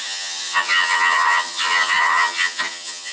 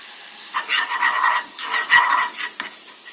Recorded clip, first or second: second